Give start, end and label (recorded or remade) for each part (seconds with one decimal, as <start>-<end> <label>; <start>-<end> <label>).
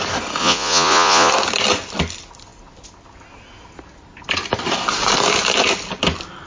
0.0-0.4 recorded; 0.4-1.3 remade; 1.3-6.5 recorded